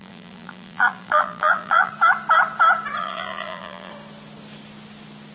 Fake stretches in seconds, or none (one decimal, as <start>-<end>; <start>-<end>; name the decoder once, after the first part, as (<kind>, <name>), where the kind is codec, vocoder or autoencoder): 0.0-1.9 (vocoder, BigVGAN v2); 3.0-3.9